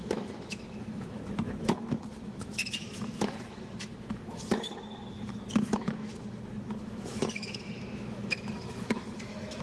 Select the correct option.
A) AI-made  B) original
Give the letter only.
A